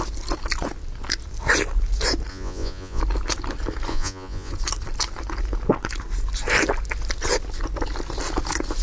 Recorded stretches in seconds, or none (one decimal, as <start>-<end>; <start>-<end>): 0.0-2.3; 3.0-3.9; 4.5-8.8